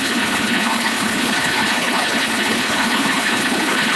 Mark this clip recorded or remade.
remade